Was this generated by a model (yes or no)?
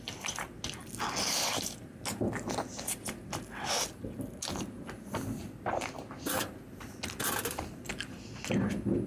no